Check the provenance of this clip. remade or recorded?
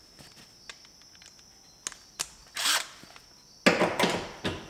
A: recorded